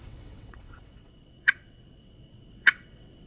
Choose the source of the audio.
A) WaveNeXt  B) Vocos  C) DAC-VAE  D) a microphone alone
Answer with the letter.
A